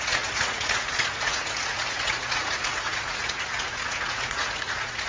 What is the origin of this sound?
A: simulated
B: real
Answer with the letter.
A